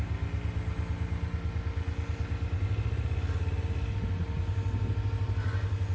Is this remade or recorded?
recorded